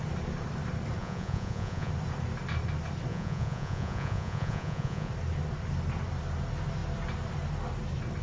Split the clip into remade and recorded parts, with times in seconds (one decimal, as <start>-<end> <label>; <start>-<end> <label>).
0.0-1.0 recorded; 1.0-1.9 remade; 1.9-3.1 recorded; 3.1-5.1 remade; 5.1-8.2 recorded

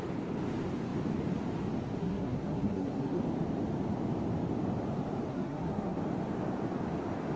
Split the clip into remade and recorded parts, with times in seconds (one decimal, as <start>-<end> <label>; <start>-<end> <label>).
0.0-2.0 recorded; 2.0-3.2 remade; 3.2-5.3 recorded; 5.3-6.0 remade; 6.0-7.4 recorded